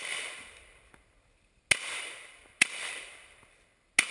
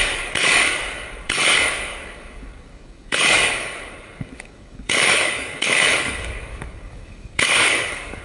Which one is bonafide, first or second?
first